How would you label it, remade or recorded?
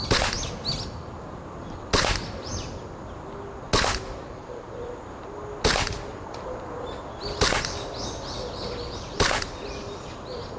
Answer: recorded